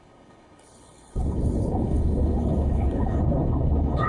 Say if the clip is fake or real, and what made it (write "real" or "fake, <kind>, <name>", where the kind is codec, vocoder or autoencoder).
fake, codec, HILCodec